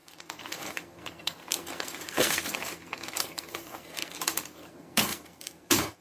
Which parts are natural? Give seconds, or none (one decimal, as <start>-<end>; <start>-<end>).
none